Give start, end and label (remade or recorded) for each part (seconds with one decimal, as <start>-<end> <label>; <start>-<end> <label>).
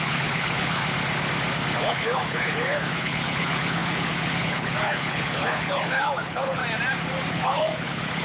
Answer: 0.0-0.8 remade; 0.8-1.8 recorded; 1.8-6.6 remade; 6.6-7.3 recorded; 7.3-8.2 remade